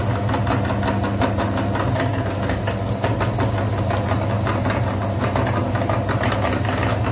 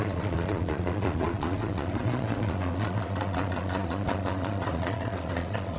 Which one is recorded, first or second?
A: first